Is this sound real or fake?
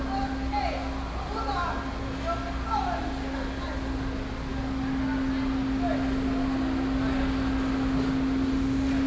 real